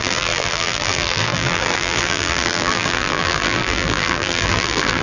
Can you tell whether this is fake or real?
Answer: fake